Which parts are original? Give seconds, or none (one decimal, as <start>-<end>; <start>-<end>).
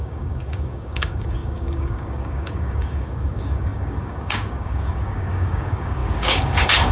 none